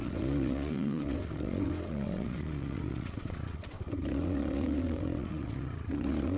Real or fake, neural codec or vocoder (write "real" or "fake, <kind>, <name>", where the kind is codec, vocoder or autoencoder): fake, vocoder, WaveNeXt